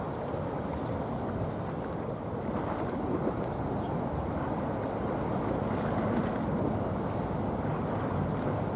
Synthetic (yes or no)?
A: no